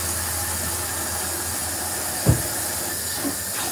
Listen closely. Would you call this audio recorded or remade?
recorded